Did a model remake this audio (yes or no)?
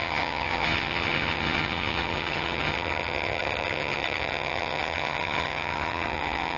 yes